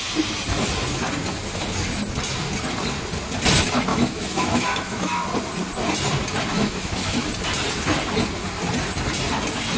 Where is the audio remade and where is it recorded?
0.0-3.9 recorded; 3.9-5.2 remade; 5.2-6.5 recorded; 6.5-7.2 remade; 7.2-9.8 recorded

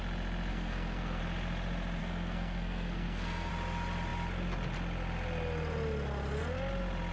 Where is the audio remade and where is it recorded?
0.0-0.5 recorded; 0.5-1.2 remade; 1.2-2.0 recorded; 2.0-3.5 remade; 3.5-7.1 recorded

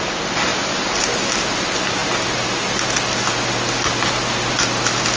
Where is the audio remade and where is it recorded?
0.0-5.2 recorded

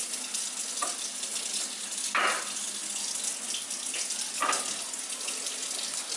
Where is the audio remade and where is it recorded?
0.0-6.2 recorded

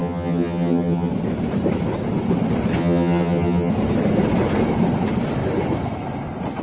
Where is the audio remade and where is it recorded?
0.0-1.1 remade; 1.1-2.8 recorded; 2.8-3.7 remade; 3.7-6.6 recorded

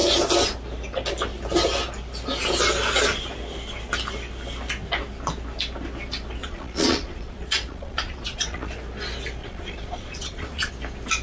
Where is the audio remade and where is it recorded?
0.0-6.4 recorded; 6.4-8.7 remade; 8.7-9.4 recorded; 9.4-10.7 remade; 10.7-11.2 recorded

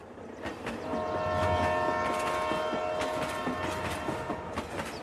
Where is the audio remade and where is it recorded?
0.0-5.0 recorded

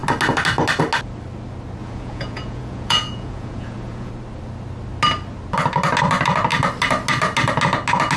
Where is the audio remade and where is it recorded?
0.0-1.8 recorded; 1.8-4.1 remade; 4.1-8.2 recorded